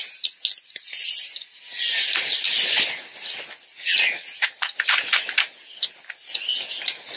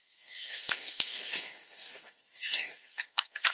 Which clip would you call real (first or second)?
first